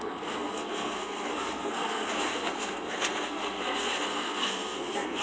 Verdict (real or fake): fake